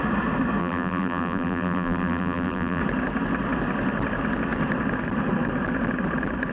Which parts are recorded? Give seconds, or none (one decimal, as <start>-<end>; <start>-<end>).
0.0-0.6; 2.8-6.5